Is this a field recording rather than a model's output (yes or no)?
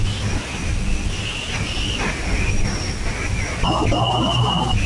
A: yes